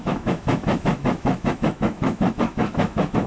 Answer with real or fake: fake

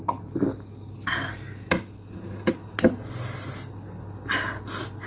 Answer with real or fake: real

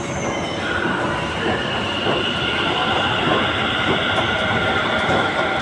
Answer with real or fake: real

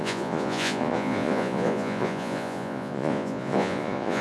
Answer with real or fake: fake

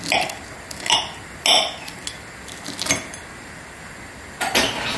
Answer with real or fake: real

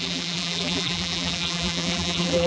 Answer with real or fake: fake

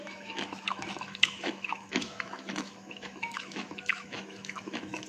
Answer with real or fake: fake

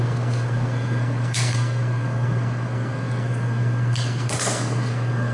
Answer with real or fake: fake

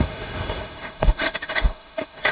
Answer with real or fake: fake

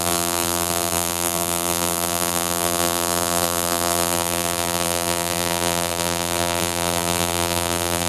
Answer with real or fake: fake